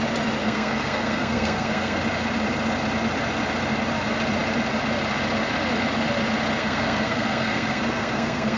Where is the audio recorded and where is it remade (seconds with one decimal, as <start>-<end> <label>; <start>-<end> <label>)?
0.0-0.4 recorded; 0.4-2.0 remade; 2.0-6.6 recorded; 6.6-8.6 remade